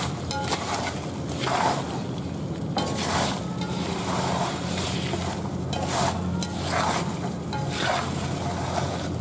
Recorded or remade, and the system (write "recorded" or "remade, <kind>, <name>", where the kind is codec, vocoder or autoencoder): recorded